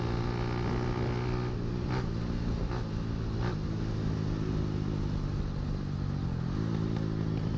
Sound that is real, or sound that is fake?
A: real